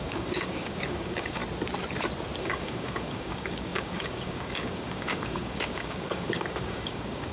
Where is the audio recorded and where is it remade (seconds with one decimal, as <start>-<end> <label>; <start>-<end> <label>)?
0.0-1.4 remade; 1.4-2.4 recorded; 2.4-7.3 remade